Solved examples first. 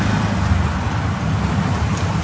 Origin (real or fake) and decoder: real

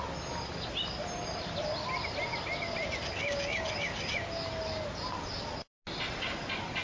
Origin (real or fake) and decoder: real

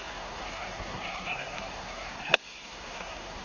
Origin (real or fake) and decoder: fake, codec, SNAC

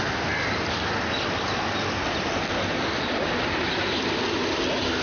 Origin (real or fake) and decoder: real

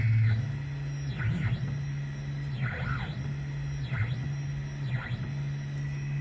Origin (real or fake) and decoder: real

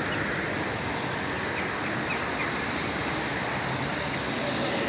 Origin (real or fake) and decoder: real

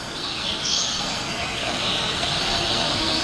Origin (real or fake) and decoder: fake, codec, SNAC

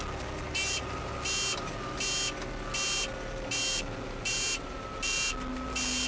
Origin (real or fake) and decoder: real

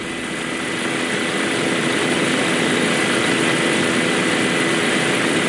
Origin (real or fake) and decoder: real